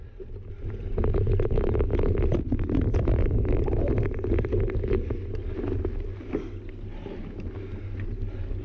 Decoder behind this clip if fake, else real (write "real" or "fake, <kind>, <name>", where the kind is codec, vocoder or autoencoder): real